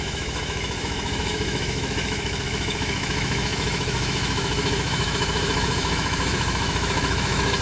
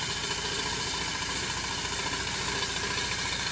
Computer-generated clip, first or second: first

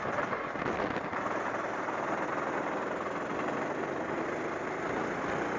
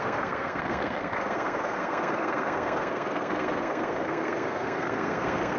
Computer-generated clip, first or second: second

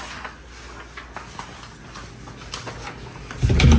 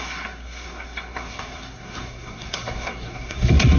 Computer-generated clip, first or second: second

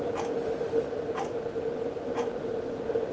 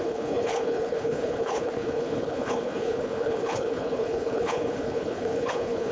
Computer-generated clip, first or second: second